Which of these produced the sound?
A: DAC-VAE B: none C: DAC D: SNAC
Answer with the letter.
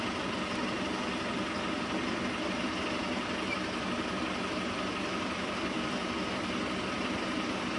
B